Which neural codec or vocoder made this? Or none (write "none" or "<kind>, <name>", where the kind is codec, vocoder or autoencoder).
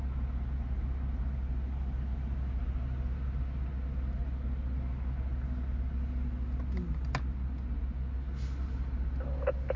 none